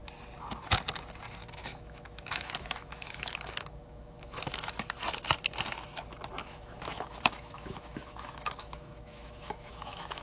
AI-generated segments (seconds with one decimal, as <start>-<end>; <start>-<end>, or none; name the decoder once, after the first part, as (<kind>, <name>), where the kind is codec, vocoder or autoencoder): 1.4-4.8 (autoencoder, DAC-VAE); 6.4-10.2